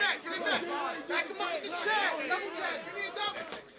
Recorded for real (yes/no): yes